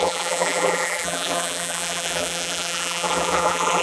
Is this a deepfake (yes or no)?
yes